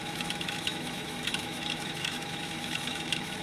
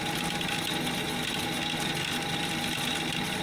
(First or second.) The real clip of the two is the second